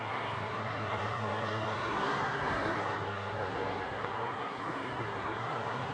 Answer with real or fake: fake